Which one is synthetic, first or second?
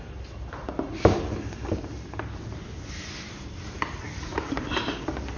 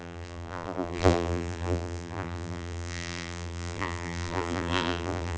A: second